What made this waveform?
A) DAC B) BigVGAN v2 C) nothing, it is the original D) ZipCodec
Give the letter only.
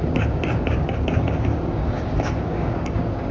A